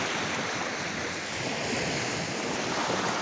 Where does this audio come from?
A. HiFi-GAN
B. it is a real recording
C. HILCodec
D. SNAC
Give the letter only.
B